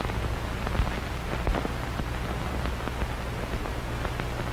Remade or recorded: recorded